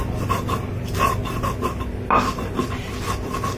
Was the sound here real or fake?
real